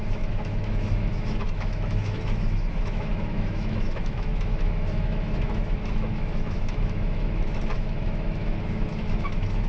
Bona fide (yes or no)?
no